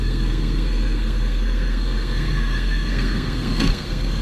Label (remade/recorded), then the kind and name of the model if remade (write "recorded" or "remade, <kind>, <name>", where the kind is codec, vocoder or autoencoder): remade, codec, SNAC